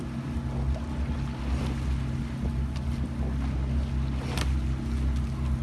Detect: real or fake real